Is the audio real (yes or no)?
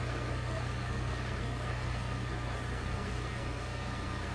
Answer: no